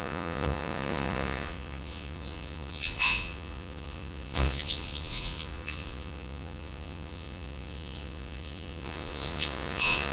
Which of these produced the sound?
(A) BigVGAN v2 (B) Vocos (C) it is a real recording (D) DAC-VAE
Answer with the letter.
B